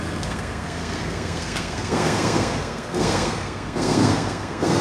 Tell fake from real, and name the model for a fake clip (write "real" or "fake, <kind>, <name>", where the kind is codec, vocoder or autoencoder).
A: fake, codec, SNAC